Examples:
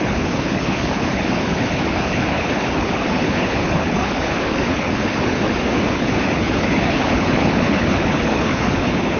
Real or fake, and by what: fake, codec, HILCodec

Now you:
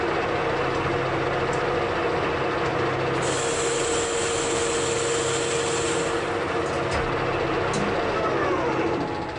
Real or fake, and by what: real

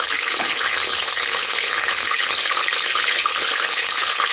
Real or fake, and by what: fake, codec, HILCodec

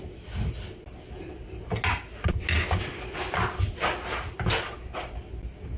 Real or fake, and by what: real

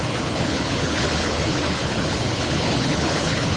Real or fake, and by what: fake, codec, HILCodec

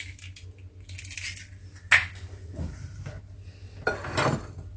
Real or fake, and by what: real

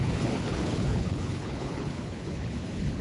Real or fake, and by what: fake, codec, HILCodec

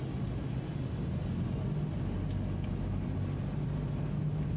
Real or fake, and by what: real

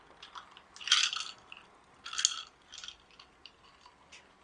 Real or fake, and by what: real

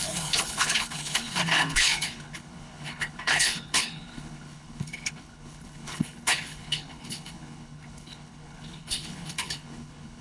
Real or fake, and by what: fake, codec, HILCodec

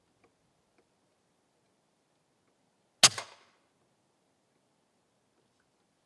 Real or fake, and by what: real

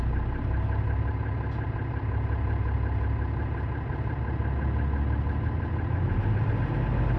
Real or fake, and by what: real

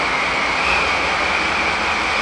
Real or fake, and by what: real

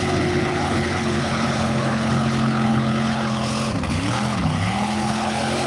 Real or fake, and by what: fake, codec, HILCodec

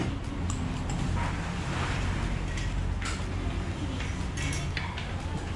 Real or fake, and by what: real